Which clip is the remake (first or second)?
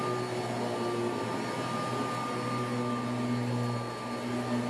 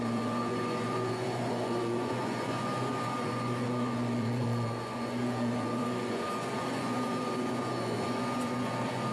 second